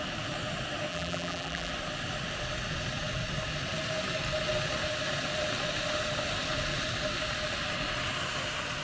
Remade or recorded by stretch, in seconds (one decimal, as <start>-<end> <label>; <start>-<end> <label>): 0.0-0.9 recorded; 0.9-1.7 remade; 1.7-8.8 recorded